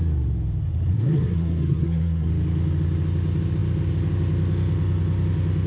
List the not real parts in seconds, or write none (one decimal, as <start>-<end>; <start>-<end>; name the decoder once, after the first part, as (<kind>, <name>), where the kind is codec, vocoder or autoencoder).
0.9-2.3 (codec, SNAC)